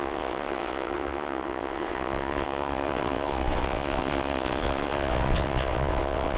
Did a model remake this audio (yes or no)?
yes